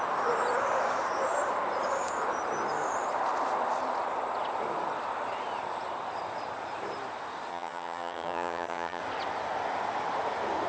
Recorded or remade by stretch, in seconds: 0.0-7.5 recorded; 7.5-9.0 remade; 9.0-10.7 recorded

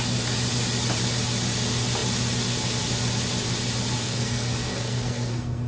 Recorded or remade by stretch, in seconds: 0.0-4.0 recorded; 4.0-5.7 remade

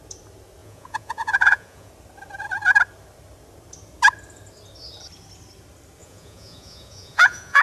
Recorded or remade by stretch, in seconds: 0.0-0.6 recorded; 0.6-1.9 remade; 1.9-6.0 recorded; 6.0-7.6 remade

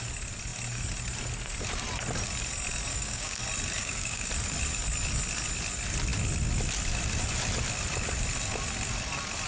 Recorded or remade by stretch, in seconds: 0.0-2.9 recorded; 2.9-3.4 remade; 3.4-3.8 recorded; 3.8-4.3 remade; 4.3-9.5 recorded